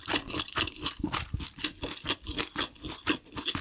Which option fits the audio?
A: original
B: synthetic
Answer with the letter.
A